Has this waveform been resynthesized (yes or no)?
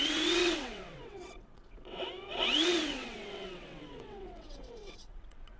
yes